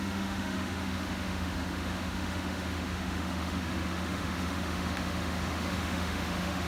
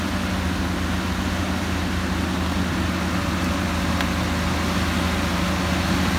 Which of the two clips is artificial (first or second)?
first